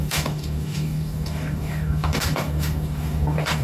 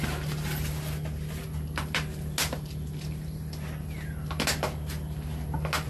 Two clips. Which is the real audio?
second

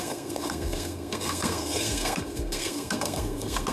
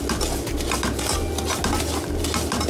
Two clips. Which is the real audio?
second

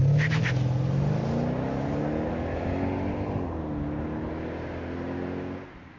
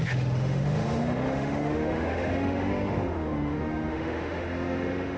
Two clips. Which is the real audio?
first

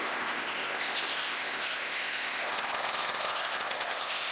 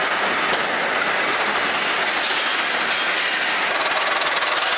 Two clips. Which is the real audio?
second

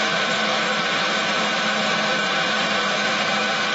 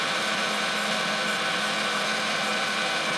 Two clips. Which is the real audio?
second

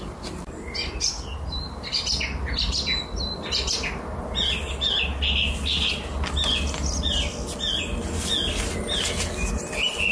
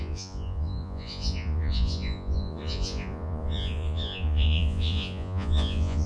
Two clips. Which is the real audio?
first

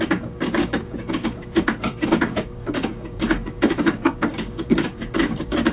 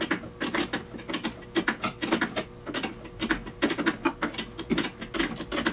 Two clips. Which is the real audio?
second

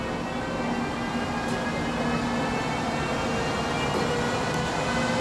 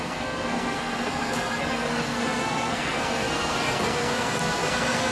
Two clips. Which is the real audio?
first